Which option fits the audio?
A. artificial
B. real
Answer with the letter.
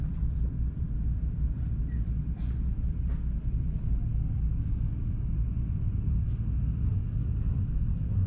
A